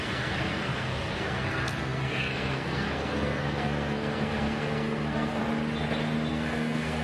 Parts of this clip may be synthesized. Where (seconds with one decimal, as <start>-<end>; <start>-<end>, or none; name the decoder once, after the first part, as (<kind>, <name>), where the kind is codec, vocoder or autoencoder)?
0.0-5.4 (codec, SNAC); 6.3-7.0